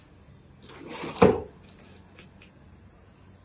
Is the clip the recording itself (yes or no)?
yes